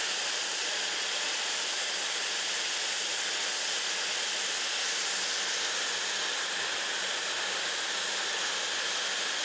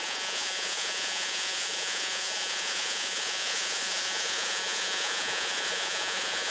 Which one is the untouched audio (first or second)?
first